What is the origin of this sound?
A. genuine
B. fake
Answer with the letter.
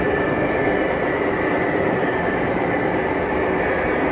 A